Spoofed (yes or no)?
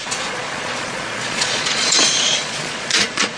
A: yes